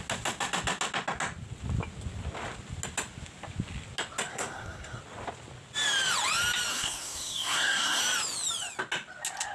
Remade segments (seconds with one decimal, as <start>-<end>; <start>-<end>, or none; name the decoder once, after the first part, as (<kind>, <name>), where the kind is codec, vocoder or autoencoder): 4.3-5.0 (codec, SNAC); 6.7-8.0